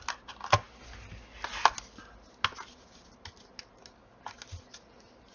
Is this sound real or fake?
real